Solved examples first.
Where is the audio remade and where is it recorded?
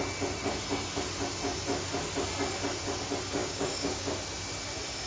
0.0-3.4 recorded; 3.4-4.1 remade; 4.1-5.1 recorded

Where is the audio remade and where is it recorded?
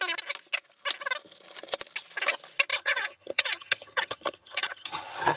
0.0-2.7 recorded; 2.7-5.4 remade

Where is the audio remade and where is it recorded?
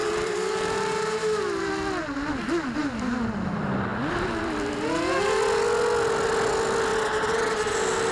0.0-1.7 remade; 1.7-8.1 recorded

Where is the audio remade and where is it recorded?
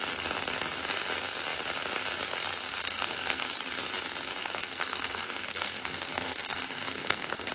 0.0-2.8 recorded; 2.8-3.5 remade; 3.5-4.4 recorded; 4.4-7.5 remade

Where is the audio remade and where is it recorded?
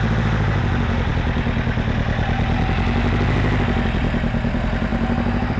0.0-4.9 recorded; 4.9-5.6 remade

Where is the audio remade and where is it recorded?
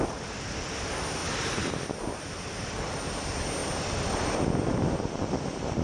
0.0-5.8 recorded